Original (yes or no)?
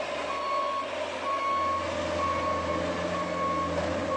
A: yes